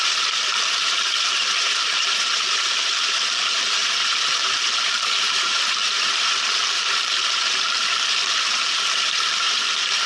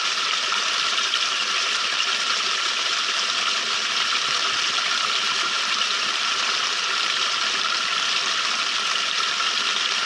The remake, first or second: first